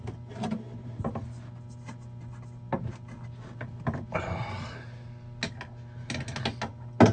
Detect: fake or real real